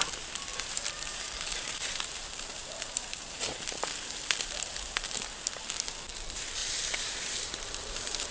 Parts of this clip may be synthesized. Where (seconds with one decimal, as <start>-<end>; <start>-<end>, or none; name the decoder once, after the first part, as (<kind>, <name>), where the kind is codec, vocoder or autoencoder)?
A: 0.5-5.5 (vocoder, BigVGAN v2); 6.6-8.3